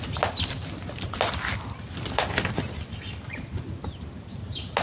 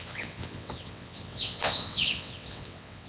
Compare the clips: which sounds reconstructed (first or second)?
second